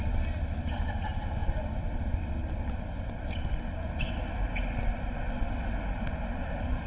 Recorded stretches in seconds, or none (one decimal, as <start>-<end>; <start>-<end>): 0.0-6.9